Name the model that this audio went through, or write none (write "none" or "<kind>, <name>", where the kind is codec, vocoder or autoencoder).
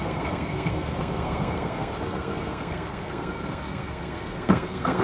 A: codec, SNAC